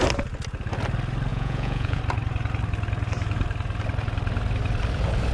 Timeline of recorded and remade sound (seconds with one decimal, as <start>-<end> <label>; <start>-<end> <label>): 0.0-1.3 recorded; 1.3-2.0 remade; 2.0-5.3 recorded